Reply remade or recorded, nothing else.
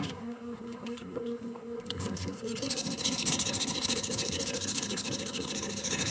remade